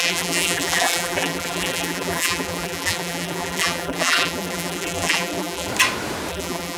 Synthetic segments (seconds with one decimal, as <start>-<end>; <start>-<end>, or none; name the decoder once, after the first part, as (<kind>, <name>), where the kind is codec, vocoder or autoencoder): 0.0-5.7 (vocoder, BigVGAN v2); 6.3-6.8